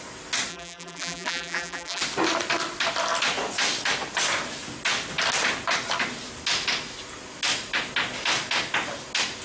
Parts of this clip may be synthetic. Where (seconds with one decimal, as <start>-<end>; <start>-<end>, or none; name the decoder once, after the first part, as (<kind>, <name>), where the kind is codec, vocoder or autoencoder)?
0.5-2.0 (vocoder, BigVGAN v2)